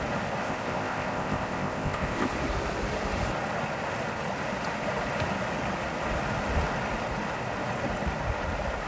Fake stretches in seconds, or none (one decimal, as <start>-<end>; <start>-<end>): 0.4-2.3